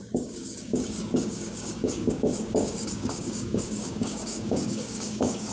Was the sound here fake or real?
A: fake